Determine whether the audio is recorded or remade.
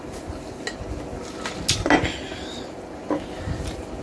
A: recorded